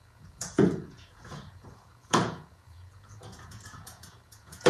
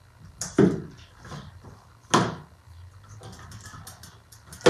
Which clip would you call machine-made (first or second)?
first